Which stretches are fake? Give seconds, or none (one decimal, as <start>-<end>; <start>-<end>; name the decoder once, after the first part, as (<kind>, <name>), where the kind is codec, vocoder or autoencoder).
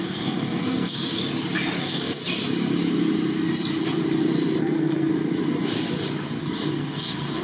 0.0-1.2 (codec, SNAC); 1.8-2.2; 4.6-5.1; 6.4-7.4